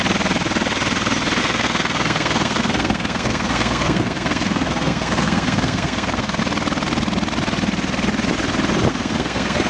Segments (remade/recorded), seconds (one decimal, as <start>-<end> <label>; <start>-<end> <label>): 0.0-1.4 recorded; 1.4-6.4 remade; 6.4-8.9 recorded; 8.9-9.7 remade